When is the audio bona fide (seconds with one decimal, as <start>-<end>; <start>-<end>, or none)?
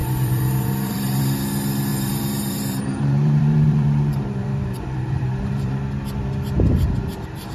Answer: 1.2-1.9; 5.8-7.5